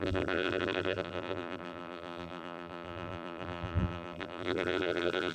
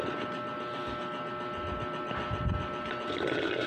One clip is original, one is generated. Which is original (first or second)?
second